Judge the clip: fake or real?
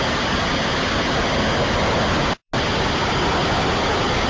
real